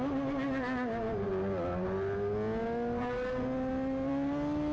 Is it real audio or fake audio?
real